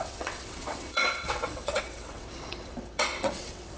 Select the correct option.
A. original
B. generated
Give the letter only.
B